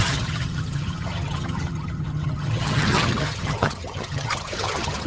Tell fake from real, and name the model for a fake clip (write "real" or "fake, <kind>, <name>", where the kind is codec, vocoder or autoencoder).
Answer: fake, vocoder, HiFi-GAN